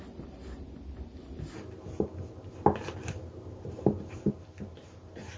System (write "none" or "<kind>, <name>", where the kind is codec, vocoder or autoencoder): none